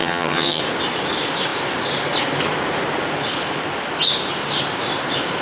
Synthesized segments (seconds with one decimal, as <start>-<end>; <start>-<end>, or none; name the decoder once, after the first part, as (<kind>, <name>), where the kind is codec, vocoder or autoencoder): 0.0-0.6 (vocoder, HiFi-GAN)